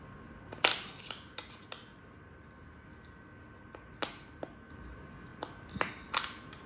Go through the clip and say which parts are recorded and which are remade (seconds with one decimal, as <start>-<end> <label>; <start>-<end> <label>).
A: 0.0-6.7 recorded